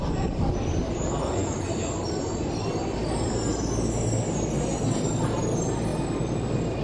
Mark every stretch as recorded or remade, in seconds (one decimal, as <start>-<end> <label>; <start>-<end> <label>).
0.0-5.9 recorded; 5.9-6.8 remade